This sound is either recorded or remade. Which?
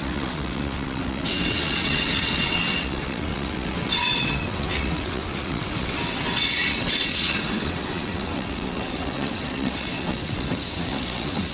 remade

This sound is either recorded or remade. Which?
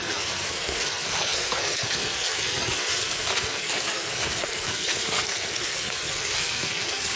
remade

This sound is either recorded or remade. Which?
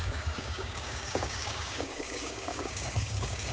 remade